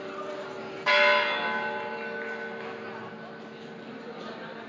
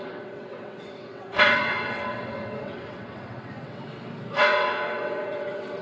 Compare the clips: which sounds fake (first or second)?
second